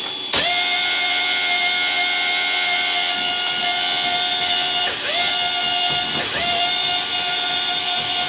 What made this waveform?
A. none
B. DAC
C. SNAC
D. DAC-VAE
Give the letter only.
A